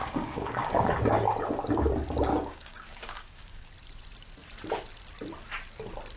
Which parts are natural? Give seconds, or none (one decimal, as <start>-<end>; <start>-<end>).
0.9-2.3; 3.7-6.2

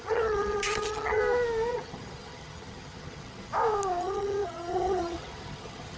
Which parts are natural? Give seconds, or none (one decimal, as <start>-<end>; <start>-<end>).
1.2-1.7; 3.5-4.0

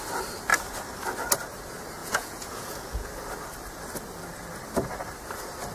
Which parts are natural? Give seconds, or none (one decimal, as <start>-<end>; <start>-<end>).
0.0-2.0; 3.1-5.7

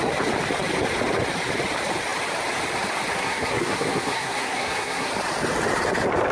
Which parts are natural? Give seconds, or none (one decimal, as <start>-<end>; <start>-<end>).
0.0-3.1; 5.1-6.3

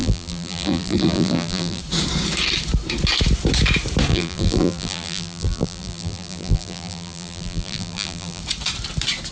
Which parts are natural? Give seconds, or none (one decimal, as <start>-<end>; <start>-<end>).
1.8-4.1; 8.4-9.3